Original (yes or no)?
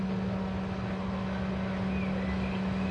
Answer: yes